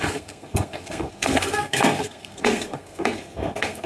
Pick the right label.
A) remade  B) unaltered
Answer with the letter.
A